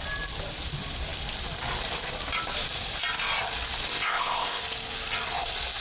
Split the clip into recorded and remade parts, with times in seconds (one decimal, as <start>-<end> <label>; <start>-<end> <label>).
0.0-3.9 recorded; 3.9-4.6 remade; 4.6-5.8 recorded